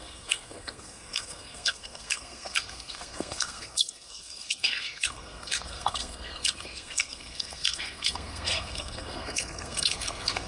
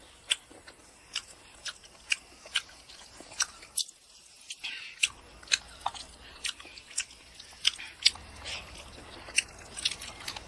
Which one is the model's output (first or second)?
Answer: first